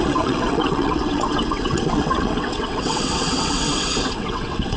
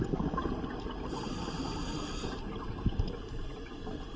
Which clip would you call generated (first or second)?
first